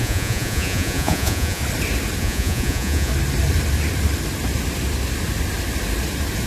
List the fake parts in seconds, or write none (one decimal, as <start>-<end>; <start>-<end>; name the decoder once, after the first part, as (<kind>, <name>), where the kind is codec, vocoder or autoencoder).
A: 0.0-1.6 (vocoder, Vocos); 2.2-3.1